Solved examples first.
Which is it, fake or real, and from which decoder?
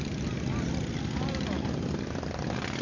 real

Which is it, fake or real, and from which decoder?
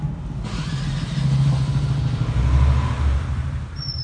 real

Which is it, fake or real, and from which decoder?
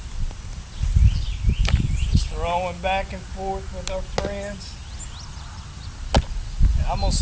real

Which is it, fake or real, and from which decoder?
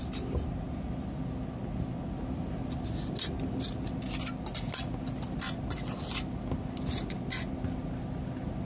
real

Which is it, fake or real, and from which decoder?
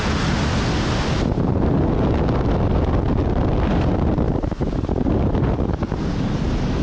real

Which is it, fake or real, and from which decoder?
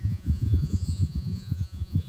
fake, vocoder, Vocos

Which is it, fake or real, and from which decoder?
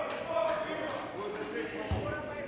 real